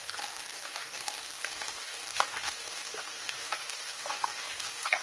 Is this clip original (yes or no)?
no